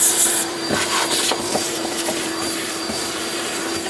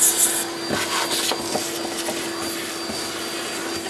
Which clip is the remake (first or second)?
first